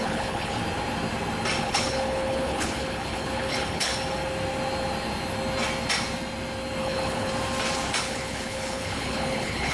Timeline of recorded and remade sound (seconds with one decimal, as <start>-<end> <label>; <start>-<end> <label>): 0.0-0.6 remade; 0.6-1.6 recorded; 1.6-3.9 remade; 3.9-6.8 recorded; 6.8-7.3 remade; 7.3-8.0 recorded; 8.0-9.7 remade